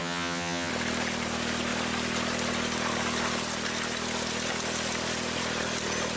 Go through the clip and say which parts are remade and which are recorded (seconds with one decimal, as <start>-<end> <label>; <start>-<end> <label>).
0.0-0.7 remade; 0.7-6.2 recorded

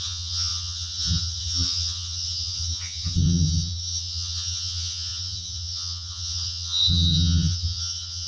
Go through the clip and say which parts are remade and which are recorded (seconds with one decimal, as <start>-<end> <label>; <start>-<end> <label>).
0.0-8.3 remade